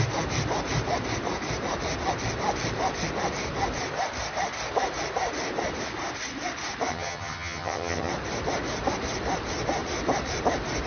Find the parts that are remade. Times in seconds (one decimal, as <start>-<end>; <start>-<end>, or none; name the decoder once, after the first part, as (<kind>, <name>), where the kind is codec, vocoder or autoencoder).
6.9-8.1 (vocoder, HiFi-GAN)